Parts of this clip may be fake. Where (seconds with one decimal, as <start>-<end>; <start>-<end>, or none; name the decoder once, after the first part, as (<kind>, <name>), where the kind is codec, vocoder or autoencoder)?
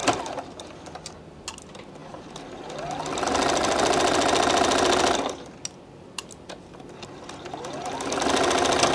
none